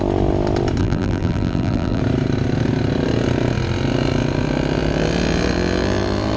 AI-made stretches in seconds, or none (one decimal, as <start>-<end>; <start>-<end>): 0.8-2.0